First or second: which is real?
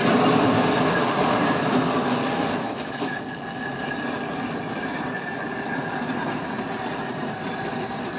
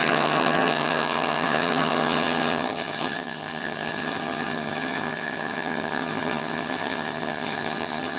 first